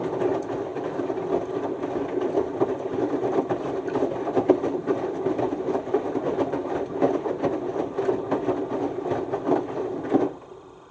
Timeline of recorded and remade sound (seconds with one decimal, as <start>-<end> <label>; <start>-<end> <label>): 0.0-2.9 recorded; 2.9-7.7 remade; 7.7-10.9 recorded